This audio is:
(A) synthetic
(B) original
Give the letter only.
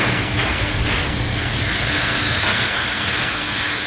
A